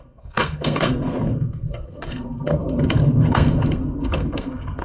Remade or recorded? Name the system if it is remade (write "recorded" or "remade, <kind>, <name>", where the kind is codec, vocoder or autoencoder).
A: remade, codec, SNAC